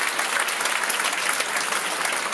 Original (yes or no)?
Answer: yes